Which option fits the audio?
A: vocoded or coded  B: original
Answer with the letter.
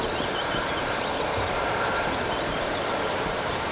A